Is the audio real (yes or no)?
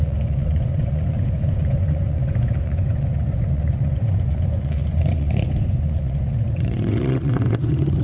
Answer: no